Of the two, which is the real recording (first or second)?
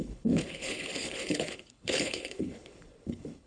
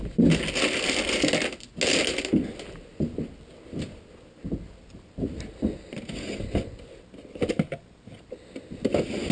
second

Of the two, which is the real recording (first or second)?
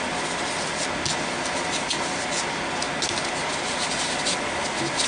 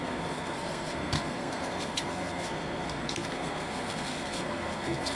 first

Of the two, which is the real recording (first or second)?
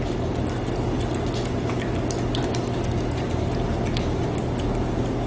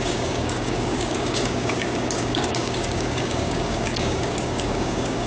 first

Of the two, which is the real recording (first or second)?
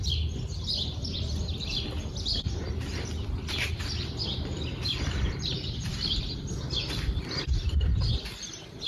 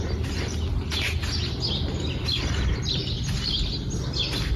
second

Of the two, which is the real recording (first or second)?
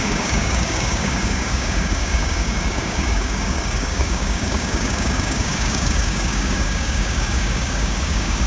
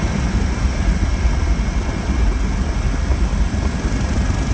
second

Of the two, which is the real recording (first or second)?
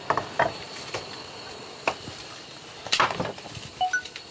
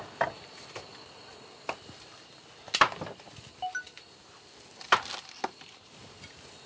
second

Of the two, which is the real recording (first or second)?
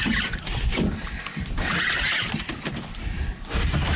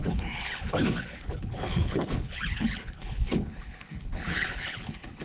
first